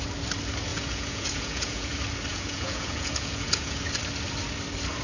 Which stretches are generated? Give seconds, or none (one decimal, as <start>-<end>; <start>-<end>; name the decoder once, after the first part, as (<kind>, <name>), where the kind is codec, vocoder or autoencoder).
0.7-1.9 (vocoder, Vocos); 2.3-3.8